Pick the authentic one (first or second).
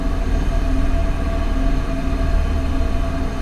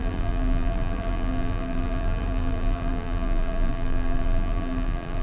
first